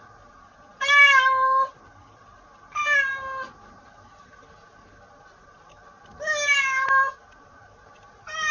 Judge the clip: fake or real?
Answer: real